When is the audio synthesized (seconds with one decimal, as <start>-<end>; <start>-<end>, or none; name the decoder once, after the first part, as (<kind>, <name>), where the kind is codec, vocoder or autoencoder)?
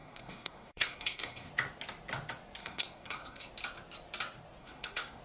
0.0-1.5 (codec, SNAC); 2.6-3.5; 4.6-5.2